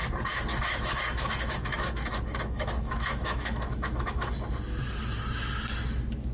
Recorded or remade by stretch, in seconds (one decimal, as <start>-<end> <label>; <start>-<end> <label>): 0.0-0.5 recorded; 0.5-4.3 remade; 4.3-6.3 recorded